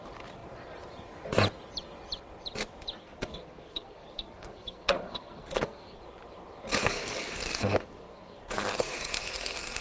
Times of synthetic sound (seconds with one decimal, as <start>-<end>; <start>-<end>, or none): 3.0-6.0; 6.8-9.8